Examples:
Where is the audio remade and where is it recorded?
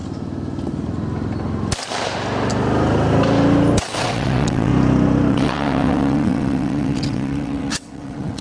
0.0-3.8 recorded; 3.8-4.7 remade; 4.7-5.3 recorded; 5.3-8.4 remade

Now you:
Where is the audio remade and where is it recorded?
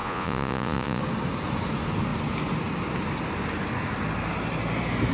0.0-1.0 remade; 1.0-5.1 recorded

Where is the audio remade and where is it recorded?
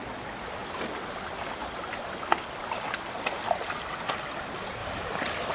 0.0-0.6 recorded; 0.6-1.2 remade; 1.2-1.6 recorded; 1.6-2.6 remade; 2.6-4.8 recorded; 4.8-5.5 remade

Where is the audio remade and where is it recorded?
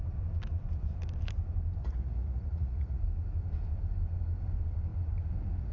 0.0-1.8 recorded; 1.8-3.0 remade; 3.0-5.7 recorded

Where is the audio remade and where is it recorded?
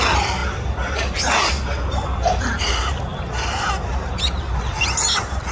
0.0-5.5 recorded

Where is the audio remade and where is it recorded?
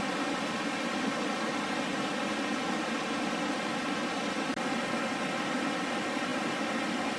0.0-7.2 recorded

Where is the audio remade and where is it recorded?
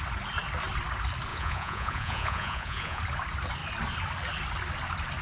0.0-1.3 recorded; 1.3-3.0 remade; 3.0-5.2 recorded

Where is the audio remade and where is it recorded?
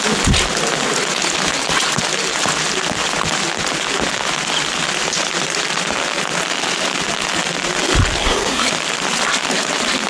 0.0-8.2 recorded; 8.2-8.7 remade; 8.7-10.1 recorded